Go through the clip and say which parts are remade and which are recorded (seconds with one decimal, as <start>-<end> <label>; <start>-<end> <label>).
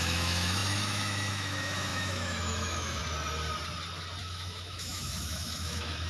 0.0-3.0 remade; 3.0-4.2 recorded; 4.2-6.1 remade